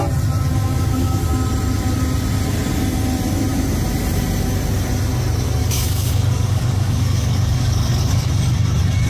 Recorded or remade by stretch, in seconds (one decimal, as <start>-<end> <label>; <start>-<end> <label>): 0.0-0.6 recorded; 0.6-1.2 remade; 1.2-5.6 recorded; 5.6-8.3 remade; 8.3-9.1 recorded